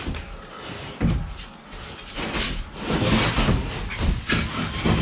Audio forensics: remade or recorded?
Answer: recorded